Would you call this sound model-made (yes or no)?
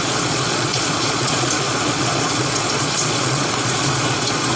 yes